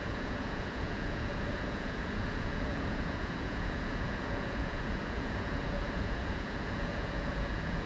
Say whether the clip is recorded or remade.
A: remade